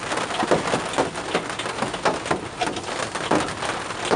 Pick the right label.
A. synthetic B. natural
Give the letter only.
B